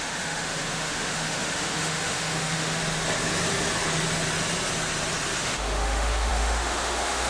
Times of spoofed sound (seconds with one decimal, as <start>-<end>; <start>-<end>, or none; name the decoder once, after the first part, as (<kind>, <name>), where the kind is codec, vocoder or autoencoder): 0.0-2.8 (autoencoder, DAC-VAE); 5.4-7.3